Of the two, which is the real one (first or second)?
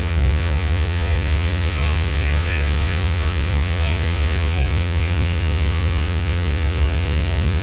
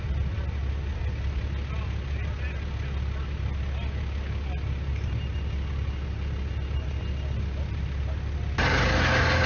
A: second